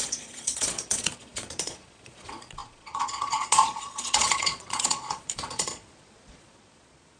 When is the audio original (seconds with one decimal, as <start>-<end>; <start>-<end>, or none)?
none